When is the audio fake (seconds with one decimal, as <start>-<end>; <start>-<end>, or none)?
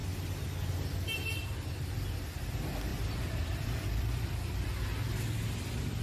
2.9-4.4